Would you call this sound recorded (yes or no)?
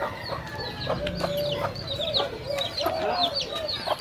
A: yes